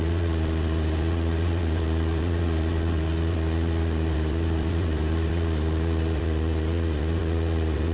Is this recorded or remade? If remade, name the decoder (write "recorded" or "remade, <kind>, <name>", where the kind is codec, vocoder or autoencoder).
remade, vocoder, Vocos